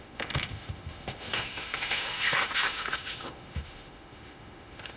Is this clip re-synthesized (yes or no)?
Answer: yes